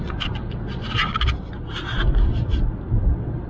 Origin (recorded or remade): recorded